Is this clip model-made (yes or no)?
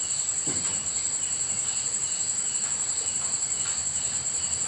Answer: yes